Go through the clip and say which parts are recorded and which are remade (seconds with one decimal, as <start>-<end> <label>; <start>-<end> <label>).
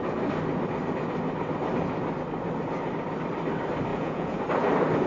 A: 0.0-3.9 recorded; 3.9-4.4 remade; 4.4-5.1 recorded